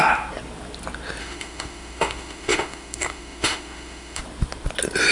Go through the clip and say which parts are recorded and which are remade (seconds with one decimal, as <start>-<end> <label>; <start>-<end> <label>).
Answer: 0.0-1.2 recorded; 1.2-4.2 remade; 4.2-5.1 recorded